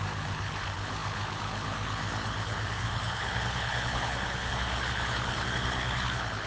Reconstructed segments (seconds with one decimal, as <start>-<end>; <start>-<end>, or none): 0.0-6.5